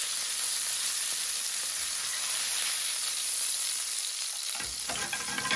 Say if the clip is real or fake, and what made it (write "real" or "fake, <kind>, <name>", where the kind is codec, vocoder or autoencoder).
real